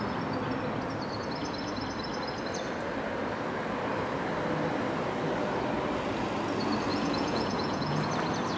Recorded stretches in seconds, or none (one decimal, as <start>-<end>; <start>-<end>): 0.0-6.9; 8.0-8.6

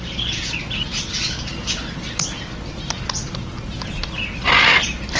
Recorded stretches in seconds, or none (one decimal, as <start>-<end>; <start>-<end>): 0.0-5.2